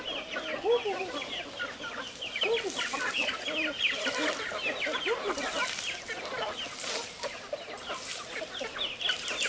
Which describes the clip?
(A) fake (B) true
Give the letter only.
B